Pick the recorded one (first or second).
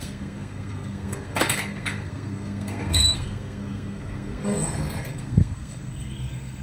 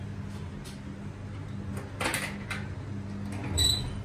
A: second